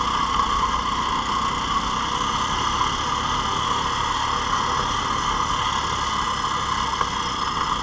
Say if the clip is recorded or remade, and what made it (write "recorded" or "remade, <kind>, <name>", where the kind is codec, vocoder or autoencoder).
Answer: recorded